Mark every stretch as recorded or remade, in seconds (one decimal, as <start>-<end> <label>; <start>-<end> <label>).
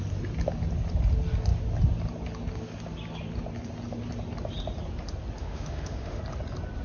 0.0-5.4 recorded; 5.4-6.2 remade; 6.2-6.8 recorded